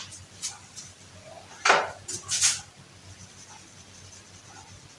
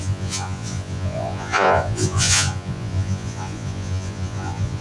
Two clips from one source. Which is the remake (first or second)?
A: second